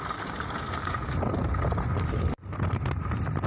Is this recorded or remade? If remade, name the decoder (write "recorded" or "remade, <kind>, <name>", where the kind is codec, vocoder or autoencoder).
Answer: recorded